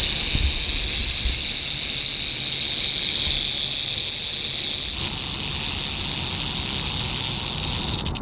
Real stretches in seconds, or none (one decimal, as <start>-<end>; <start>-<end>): 0.0-1.0; 1.6-8.2